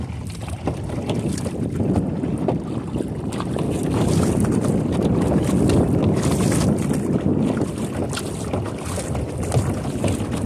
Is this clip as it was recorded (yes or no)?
yes